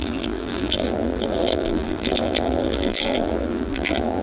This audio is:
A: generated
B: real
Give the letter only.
A